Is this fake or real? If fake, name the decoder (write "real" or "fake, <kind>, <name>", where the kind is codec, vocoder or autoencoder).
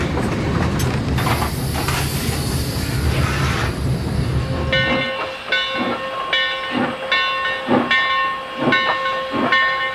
real